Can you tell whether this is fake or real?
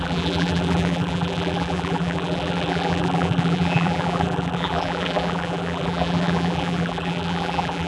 fake